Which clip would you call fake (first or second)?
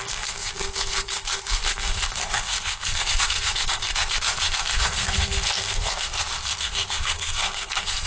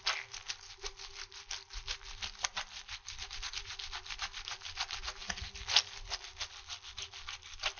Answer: first